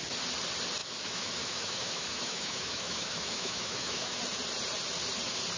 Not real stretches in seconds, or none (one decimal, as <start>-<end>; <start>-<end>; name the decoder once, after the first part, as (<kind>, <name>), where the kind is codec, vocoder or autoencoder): 0.8-4.2 (autoencoder, DAC-VAE)